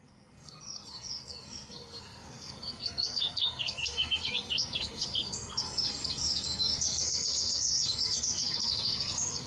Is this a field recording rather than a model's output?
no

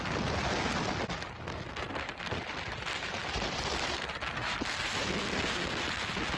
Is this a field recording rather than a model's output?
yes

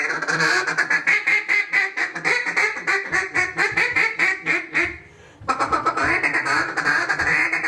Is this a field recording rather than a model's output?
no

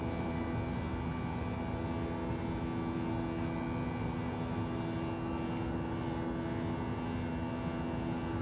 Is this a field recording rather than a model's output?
yes